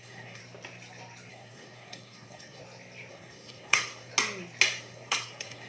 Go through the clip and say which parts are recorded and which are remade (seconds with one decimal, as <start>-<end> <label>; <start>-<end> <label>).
0.0-0.4 remade; 0.4-1.3 recorded; 1.3-2.6 remade; 2.6-3.1 recorded; 3.1-4.1 remade; 4.1-4.8 recorded; 4.8-5.7 remade